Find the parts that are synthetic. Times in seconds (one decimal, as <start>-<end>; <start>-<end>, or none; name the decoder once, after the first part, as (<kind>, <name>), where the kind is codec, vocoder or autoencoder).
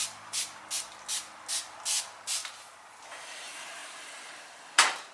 0.0-0.6 (vocoder, BigVGAN v2); 2.4-3.0